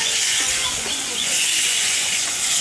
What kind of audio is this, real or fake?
fake